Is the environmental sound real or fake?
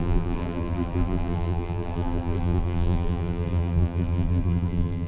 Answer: fake